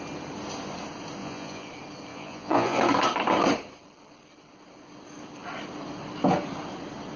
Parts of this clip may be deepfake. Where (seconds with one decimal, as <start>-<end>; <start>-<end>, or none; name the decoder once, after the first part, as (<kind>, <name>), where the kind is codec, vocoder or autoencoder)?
1.2-1.7 (vocoder, Vocos); 2.1-2.8